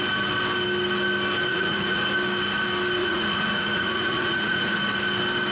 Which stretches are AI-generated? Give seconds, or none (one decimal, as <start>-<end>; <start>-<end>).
1.5-2.0; 3.0-4.8